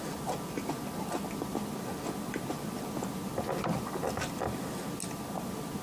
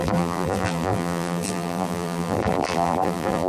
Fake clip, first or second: second